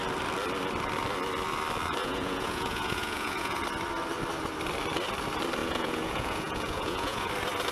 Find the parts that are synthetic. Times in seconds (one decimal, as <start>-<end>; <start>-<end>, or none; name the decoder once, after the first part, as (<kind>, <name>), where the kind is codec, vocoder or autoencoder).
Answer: 2.0-3.6 (vocoder, Vocos); 5.6-7.3